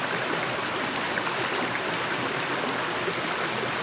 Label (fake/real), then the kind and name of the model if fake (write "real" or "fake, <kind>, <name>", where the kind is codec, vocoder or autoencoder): real